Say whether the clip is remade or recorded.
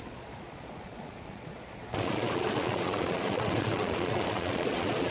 remade